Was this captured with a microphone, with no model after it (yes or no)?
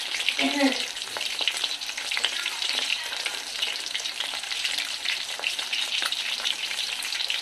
no